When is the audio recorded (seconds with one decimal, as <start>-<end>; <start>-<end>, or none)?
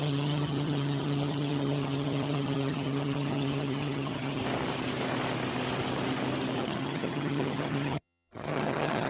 4.4-6.6